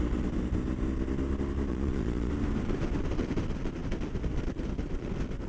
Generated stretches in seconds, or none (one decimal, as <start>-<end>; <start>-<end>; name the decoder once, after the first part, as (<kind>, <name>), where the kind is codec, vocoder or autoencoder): 1.7-2.3 (vocoder, Vocos)